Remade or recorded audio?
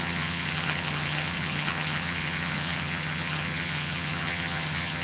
remade